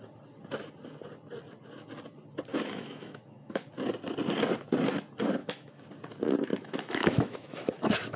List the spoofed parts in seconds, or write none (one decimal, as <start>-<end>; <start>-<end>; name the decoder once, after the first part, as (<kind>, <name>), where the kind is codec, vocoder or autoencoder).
2.5-3.7 (autoencoder, DAC-VAE); 5.4-5.9; 6.5-8.2

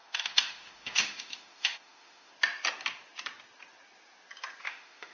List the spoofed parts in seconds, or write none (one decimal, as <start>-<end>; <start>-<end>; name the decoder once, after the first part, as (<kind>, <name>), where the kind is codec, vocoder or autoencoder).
0.0-2.3 (autoencoder, DAC-VAE); 4.6-5.1

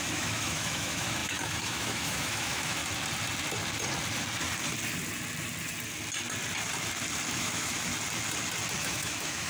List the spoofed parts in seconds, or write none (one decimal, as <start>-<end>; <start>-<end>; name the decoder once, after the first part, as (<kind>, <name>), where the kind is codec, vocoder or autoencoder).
0.0-2.8 (autoencoder, DAC-VAE); 7.3-7.9; 8.8-9.5

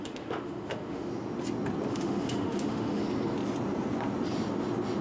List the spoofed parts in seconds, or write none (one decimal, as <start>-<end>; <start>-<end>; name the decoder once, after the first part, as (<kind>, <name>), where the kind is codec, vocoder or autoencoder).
0.0-1.1 (autoencoder, DAC-VAE); 1.9-3.0